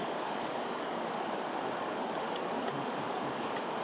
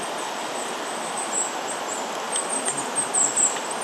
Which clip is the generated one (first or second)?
first